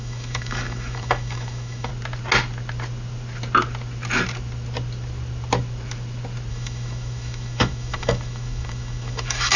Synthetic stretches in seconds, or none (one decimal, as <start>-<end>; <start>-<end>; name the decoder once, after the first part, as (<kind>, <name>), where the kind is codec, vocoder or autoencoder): 0.0-1.9 (autoencoder, DAC-VAE); 6.5-9.6

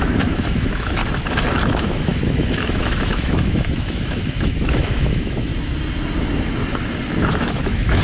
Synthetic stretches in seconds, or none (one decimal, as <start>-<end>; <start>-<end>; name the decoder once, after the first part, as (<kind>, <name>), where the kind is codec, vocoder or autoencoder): 0.0-1.0 (autoencoder, DAC-VAE); 1.7-5.5; 7.3-8.0

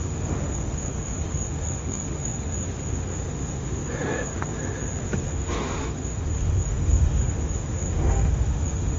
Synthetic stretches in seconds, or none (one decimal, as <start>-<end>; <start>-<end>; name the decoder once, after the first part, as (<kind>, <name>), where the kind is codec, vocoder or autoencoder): 0.0-9.0 (autoencoder, DAC-VAE)

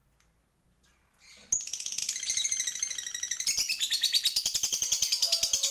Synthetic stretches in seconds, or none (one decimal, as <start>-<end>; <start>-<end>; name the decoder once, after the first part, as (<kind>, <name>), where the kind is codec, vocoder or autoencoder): none

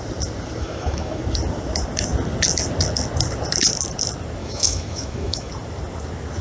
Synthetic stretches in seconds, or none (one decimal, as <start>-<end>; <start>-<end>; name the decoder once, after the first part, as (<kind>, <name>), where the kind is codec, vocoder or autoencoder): 0.6-1.2 (autoencoder, DAC-VAE); 4.4-5.5

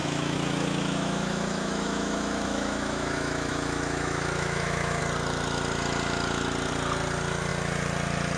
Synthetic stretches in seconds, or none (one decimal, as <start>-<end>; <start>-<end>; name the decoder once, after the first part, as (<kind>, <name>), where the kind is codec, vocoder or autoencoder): 0.0-5.0 (autoencoder, DAC-VAE)